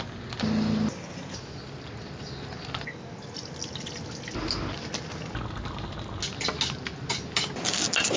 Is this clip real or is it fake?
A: real